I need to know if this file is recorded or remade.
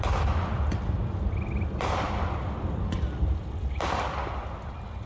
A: recorded